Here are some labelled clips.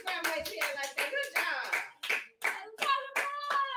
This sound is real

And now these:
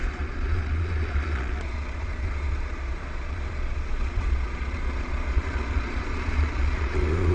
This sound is fake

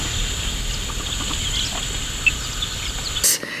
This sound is real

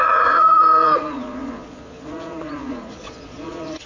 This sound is fake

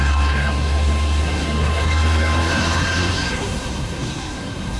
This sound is fake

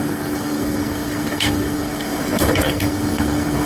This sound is fake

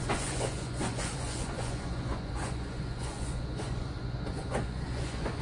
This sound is fake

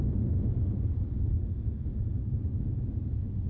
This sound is real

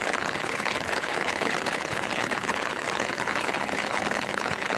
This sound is fake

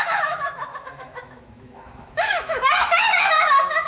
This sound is fake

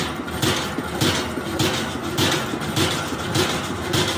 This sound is real